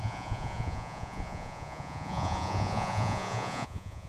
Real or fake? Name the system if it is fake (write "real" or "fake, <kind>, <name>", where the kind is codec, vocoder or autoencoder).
fake, vocoder, Vocos